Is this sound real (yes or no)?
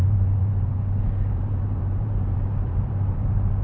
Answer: no